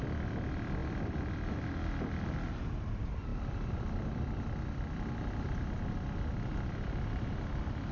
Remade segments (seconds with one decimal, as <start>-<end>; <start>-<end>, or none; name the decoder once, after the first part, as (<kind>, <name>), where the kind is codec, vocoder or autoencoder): 0.8-1.6 (vocoder, BigVGAN v2); 3.3-5.6; 6.3-7.3